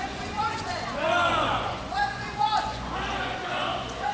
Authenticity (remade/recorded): remade